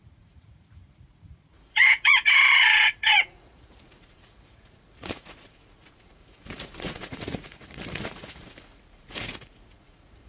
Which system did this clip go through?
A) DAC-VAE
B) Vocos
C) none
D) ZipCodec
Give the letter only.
B